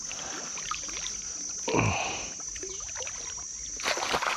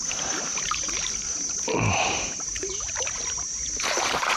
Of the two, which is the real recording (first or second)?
first